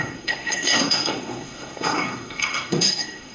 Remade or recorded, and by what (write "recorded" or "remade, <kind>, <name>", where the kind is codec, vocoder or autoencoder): remade, codec, SNAC